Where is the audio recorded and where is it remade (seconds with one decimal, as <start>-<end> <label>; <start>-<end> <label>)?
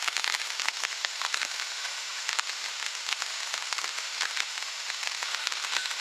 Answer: 0.0-6.0 remade